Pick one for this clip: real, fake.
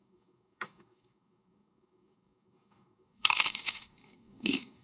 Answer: fake